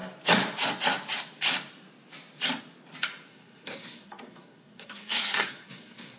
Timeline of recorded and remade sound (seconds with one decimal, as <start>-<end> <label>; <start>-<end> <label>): 0.0-3.3 recorded; 3.3-6.2 remade